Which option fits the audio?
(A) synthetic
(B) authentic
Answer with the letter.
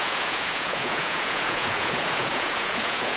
A